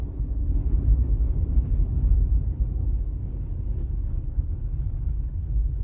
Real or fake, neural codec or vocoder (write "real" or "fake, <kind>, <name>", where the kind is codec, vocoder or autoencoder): fake, codec, HILCodec